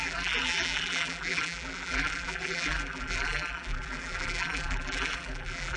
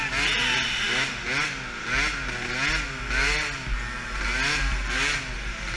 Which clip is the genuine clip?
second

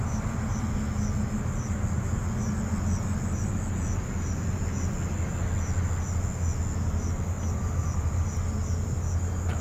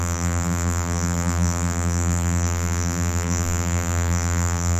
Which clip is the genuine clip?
first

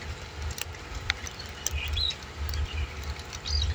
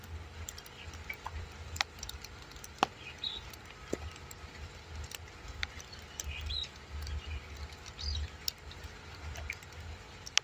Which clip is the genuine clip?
second